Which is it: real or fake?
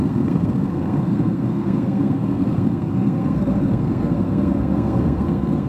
fake